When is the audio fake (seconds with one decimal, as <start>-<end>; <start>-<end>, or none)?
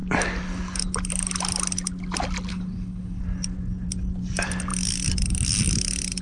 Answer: 2.5-3.2